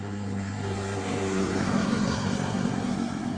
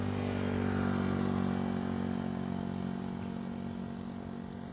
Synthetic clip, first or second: first